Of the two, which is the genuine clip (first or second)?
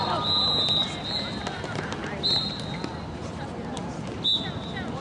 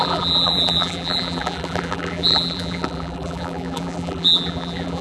first